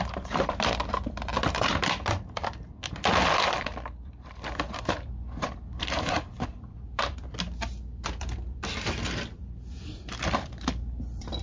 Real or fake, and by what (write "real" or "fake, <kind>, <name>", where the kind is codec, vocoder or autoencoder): fake, vocoder, BigVGAN v2